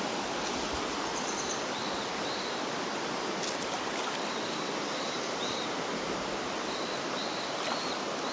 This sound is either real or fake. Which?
real